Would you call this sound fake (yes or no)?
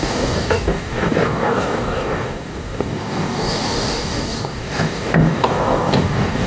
yes